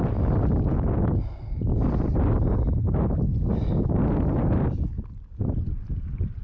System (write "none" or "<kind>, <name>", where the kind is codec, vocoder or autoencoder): none